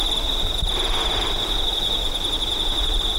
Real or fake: real